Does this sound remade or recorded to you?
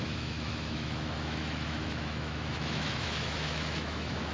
remade